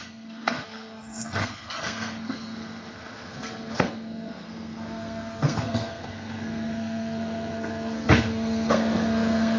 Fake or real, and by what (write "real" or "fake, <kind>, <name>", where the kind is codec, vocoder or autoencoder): fake, codec, SNAC